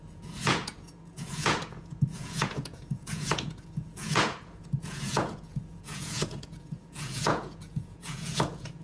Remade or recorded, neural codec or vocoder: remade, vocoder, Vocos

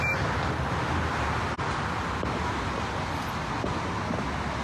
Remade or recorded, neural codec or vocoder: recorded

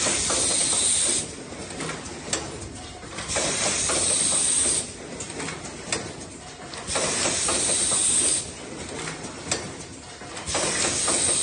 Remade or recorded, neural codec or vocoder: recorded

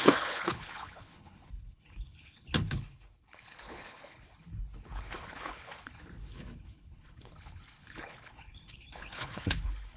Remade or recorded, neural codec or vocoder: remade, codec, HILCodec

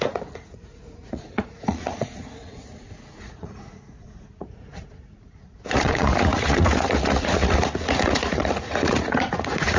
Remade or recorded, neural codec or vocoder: remade, vocoder, Vocos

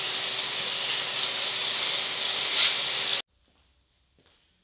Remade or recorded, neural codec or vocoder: recorded